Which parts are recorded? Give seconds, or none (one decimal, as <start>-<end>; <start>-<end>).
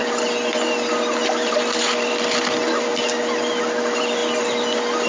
0.0-5.1